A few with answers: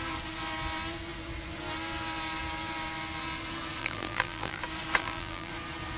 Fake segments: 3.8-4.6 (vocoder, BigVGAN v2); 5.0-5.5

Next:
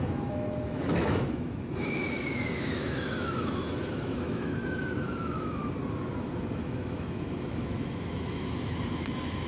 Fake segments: 0.0-5.6 (autoencoder, DAC-VAE); 6.6-9.5

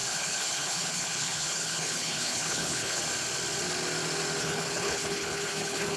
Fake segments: 0.0-3.0 (codec, HILCodec); 4.4-6.0